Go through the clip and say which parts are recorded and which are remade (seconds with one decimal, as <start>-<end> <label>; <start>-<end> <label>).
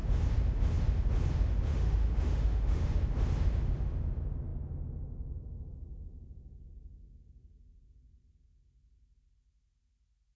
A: 0.0-1.7 recorded; 1.7-3.0 remade; 3.0-10.4 recorded